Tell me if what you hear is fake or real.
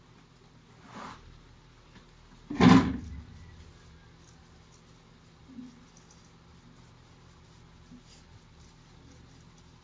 real